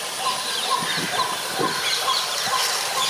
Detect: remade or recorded recorded